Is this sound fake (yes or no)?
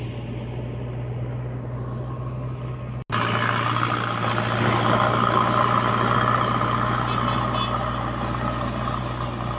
no